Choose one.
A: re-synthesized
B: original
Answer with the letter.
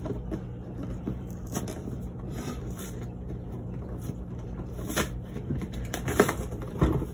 A